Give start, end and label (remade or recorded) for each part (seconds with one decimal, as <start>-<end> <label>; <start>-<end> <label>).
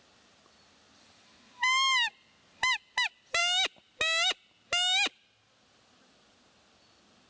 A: 0.0-7.3 recorded